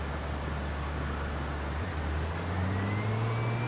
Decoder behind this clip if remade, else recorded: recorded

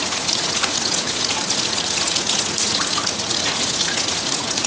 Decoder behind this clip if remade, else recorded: remade, vocoder, Vocos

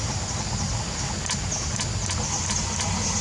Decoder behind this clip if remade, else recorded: recorded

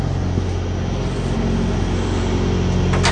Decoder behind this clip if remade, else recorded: recorded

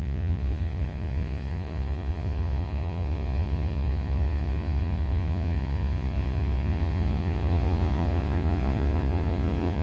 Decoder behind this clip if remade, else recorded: remade, vocoder, Vocos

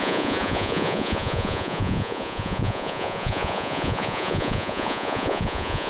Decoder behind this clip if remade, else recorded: remade, vocoder, Vocos